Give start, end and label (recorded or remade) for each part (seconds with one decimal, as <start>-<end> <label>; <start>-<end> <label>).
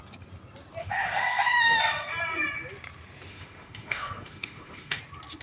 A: 0.0-0.8 recorded; 0.8-1.8 remade; 1.8-3.3 recorded; 3.3-5.0 remade; 5.0-5.4 recorded